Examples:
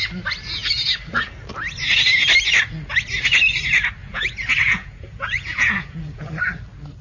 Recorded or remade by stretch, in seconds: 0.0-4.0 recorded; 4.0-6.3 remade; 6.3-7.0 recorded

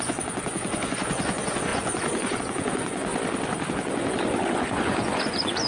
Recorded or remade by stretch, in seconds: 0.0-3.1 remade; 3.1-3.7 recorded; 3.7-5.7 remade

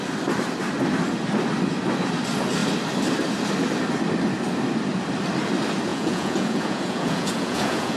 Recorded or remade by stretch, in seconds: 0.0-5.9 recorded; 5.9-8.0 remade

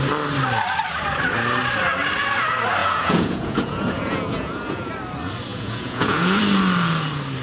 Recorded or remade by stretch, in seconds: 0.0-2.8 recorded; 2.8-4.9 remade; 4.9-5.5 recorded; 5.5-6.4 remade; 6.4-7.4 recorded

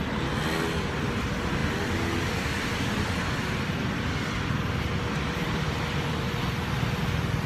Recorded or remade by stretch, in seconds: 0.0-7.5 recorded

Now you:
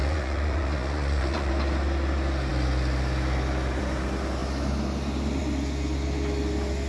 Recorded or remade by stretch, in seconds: 0.0-1.5 remade; 1.5-6.9 recorded

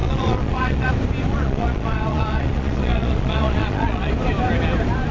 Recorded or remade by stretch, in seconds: 0.0-0.9 remade; 0.9-1.3 recorded; 1.3-4.1 remade; 4.1-5.1 recorded